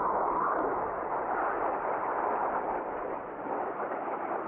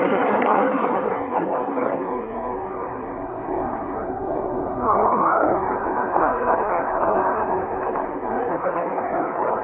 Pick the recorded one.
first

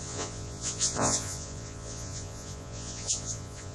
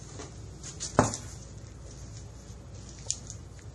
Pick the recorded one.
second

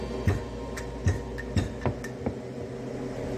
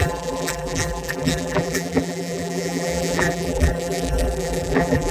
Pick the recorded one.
first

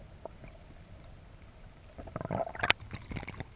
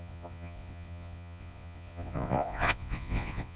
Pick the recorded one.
first